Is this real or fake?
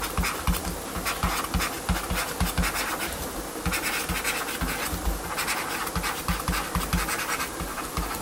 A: real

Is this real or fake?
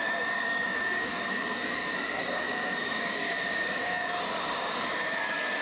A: fake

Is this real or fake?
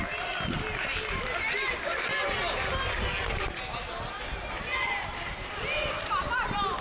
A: real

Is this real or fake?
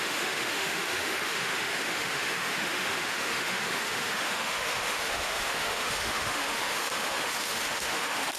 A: fake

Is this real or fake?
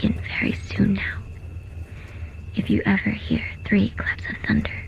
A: real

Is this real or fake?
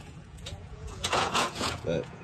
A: fake